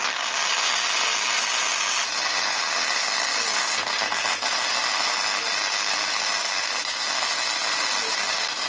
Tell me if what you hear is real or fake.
real